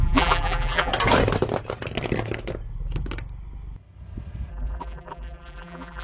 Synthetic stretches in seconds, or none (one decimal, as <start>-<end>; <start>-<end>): 0.0-0.9; 4.5-6.0